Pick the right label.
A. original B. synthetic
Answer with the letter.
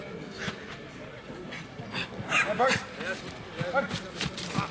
A